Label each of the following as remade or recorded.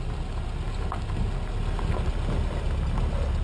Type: recorded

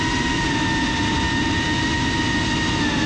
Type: recorded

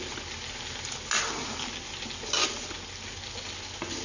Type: recorded